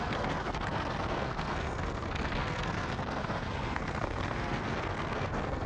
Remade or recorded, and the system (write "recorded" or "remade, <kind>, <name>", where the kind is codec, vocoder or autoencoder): remade, codec, SNAC